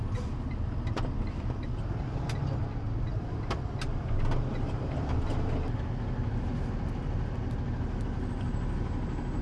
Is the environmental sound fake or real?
real